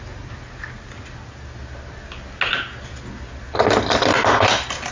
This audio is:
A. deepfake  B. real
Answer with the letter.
B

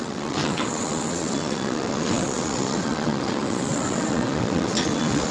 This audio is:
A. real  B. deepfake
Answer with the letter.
B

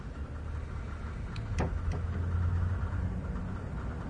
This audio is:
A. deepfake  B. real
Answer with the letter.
B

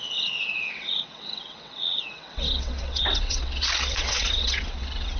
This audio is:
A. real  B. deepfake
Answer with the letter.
B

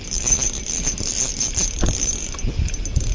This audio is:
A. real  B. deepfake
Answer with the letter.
A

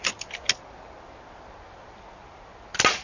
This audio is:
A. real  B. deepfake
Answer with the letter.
A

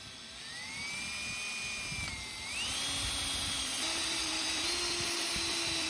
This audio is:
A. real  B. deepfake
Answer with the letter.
A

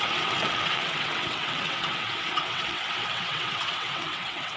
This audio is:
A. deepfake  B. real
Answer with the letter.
A